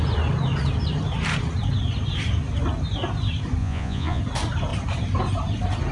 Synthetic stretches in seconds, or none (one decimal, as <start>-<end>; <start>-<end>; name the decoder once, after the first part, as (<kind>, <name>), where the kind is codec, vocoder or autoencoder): 3.6-4.2 (vocoder, Vocos)